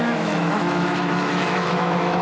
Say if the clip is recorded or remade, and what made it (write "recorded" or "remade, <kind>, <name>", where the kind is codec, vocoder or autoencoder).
remade, autoencoder, DAC-VAE